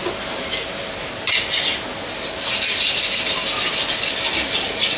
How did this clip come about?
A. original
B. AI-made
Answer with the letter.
A